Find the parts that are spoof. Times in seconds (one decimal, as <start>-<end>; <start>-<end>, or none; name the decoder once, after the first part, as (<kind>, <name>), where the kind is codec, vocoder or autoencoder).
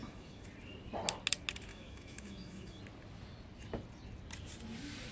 0.0-0.5 (autoencoder, DAC-VAE); 1.7-2.8